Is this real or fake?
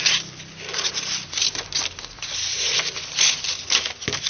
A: real